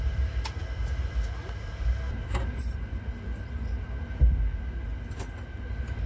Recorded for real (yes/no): yes